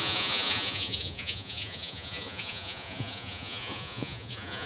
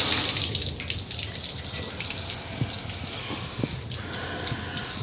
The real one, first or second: second